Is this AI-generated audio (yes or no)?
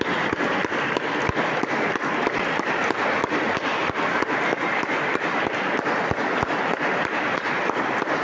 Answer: no